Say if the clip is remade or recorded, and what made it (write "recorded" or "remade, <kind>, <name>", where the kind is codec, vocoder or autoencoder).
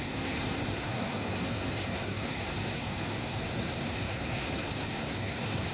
remade, codec, SNAC